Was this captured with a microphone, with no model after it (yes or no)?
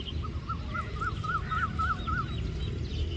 yes